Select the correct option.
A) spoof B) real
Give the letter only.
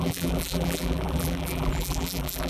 A